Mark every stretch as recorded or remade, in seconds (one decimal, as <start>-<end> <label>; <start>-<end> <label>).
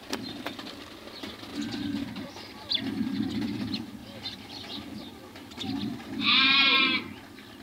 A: 0.0-1.5 recorded; 1.5-3.3 remade; 3.3-4.0 recorded; 4.0-6.4 remade; 6.4-7.6 recorded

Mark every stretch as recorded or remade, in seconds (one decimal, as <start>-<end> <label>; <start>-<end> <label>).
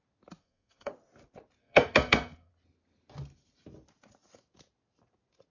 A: 0.0-0.4 recorded; 0.4-0.9 remade; 0.9-1.6 recorded; 1.6-2.5 remade; 2.5-5.5 recorded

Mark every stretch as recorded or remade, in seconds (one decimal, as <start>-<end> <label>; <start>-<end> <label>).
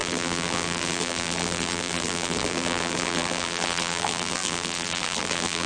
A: 0.0-5.7 remade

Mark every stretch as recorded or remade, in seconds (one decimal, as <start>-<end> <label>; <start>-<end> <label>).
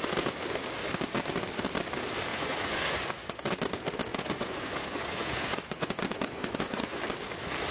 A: 0.0-2.3 recorded; 2.3-3.5 remade; 3.5-4.1 recorded; 4.1-7.0 remade; 7.0-7.7 recorded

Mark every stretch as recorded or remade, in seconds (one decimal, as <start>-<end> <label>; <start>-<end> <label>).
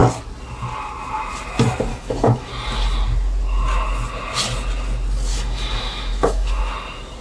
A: 0.0-1.9 recorded; 1.9-2.5 remade; 2.5-5.3 recorded; 5.3-6.6 remade; 6.6-7.2 recorded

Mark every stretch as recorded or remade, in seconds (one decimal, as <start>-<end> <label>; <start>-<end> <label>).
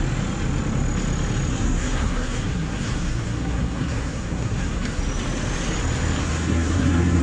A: 0.0-1.5 recorded; 1.5-5.0 remade; 5.0-6.2 recorded; 6.2-7.2 remade